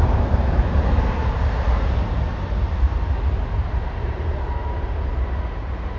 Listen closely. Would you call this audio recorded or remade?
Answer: recorded